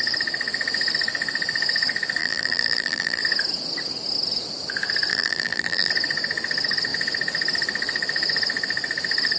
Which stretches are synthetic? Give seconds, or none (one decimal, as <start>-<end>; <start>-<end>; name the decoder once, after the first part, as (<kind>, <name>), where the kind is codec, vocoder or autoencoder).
2.2-3.2 (vocoder, BigVGAN v2); 5.1-5.9